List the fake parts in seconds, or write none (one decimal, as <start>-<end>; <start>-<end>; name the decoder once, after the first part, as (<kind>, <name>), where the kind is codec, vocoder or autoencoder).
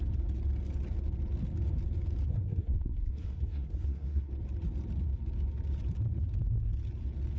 2.3-4.3 (codec, SNAC)